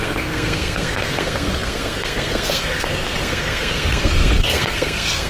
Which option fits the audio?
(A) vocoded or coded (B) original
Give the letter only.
A